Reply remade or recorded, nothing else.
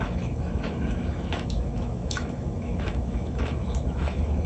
remade